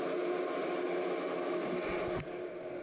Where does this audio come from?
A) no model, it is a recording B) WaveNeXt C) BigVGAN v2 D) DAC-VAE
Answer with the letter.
A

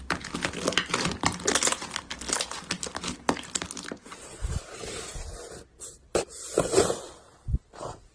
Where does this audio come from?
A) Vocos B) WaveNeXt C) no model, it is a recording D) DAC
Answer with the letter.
C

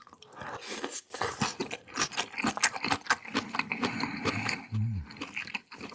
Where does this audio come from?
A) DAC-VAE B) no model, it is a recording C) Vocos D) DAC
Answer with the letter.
B